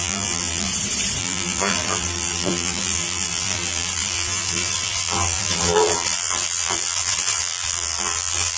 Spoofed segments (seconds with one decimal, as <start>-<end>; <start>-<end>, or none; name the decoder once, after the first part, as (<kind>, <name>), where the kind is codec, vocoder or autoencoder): 0.0-0.7 (vocoder, BigVGAN v2); 1.2-8.6